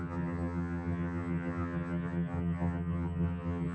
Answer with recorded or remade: remade